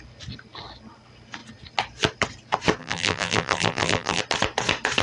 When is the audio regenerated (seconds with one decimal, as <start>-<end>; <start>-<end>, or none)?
2.8-4.2